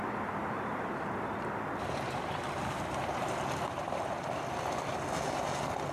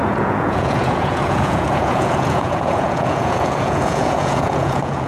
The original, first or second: first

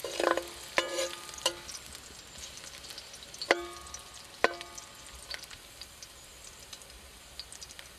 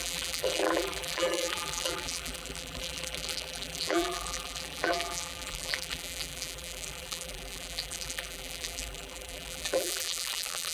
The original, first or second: first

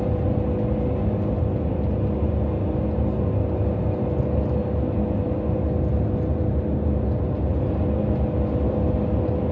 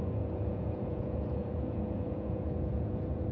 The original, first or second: first